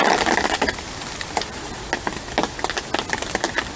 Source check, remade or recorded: recorded